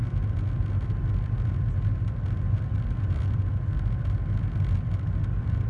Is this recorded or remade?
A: recorded